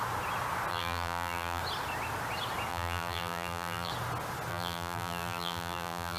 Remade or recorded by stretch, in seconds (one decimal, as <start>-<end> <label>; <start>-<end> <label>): 0.0-0.7 recorded; 0.7-1.6 remade; 1.6-2.7 recorded; 2.7-3.9 remade; 3.9-4.5 recorded; 4.5-6.2 remade